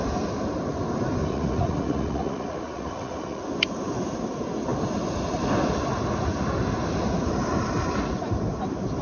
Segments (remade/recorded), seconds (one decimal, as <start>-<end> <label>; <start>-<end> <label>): 0.0-1.2 recorded; 1.2-3.4 remade; 3.4-9.0 recorded